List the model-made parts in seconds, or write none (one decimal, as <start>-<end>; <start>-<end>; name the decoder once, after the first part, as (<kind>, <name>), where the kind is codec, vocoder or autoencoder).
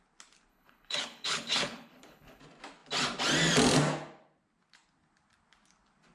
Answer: 0.5-2.4 (codec, HILCodec)